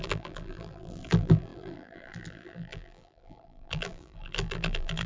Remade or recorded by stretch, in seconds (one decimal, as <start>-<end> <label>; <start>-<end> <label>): 0.0-5.1 remade